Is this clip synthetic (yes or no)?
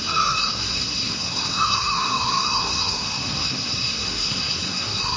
yes